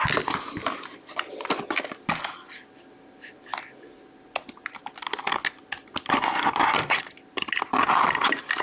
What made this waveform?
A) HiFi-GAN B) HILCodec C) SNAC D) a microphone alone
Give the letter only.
D